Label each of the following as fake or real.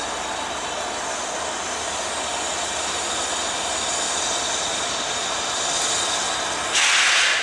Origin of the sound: real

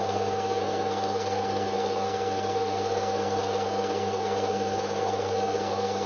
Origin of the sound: fake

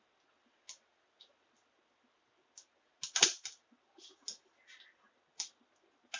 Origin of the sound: real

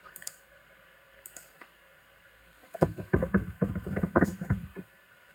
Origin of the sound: fake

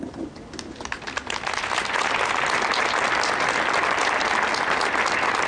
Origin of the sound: real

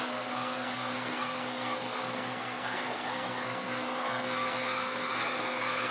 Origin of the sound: fake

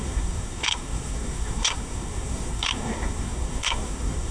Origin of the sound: fake